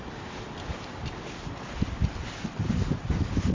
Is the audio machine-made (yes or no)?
yes